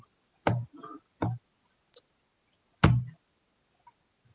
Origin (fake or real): real